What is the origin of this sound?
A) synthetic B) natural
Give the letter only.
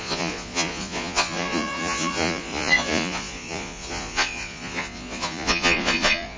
A